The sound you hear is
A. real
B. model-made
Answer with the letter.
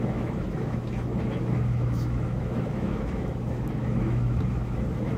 B